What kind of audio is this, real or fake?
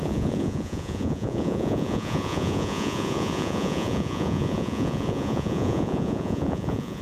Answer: fake